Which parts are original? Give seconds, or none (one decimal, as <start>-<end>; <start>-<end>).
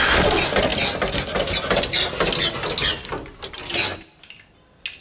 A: 0.0-5.0